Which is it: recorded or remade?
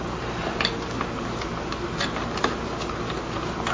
recorded